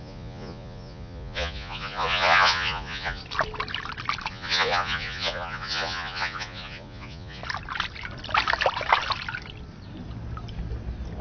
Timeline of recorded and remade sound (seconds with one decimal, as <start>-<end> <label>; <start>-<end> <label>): 0.0-3.2 remade; 3.2-4.3 recorded; 4.3-7.4 remade; 7.4-11.2 recorded